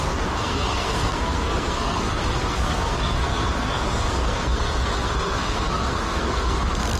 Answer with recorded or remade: remade